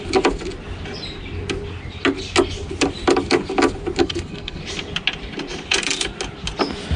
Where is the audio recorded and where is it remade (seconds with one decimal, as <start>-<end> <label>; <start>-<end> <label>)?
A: 0.0-4.0 recorded; 4.0-4.6 remade; 4.6-7.0 recorded